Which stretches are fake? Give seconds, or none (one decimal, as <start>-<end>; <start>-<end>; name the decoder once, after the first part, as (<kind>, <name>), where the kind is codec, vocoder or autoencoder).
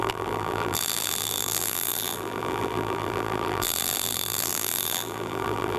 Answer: 0.0-5.8 (vocoder, BigVGAN v2)